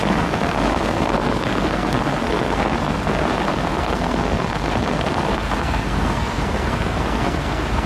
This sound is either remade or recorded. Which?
remade